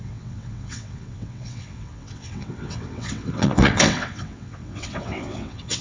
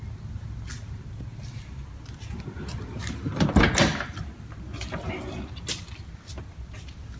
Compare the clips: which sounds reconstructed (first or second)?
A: first